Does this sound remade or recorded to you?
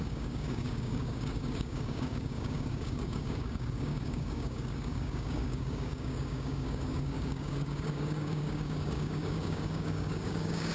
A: remade